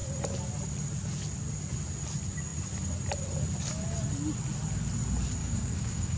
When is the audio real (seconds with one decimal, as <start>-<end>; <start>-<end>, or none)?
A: 0.0-5.4